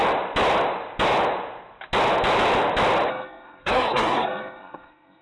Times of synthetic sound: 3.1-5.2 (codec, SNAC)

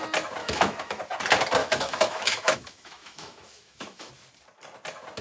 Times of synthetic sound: 0.4-1.0 (autoencoder, DAC-VAE); 1.6-4.1

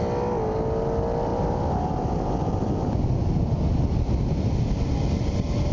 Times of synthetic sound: 1.3-1.9 (vocoder, BigVGAN v2)

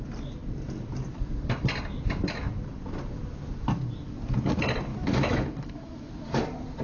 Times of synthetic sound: 4.9-6.1 (autoencoder, DAC-VAE)

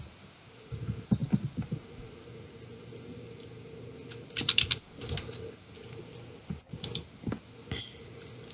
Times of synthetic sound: none

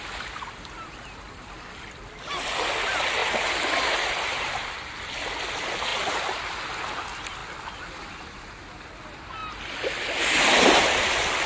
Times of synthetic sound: 3.2-4.4 (vocoder, BigVGAN v2)

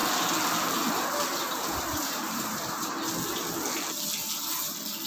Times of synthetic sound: 1.3-2.9 (vocoder, BigVGAN v2)